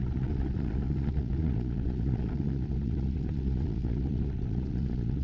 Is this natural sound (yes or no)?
no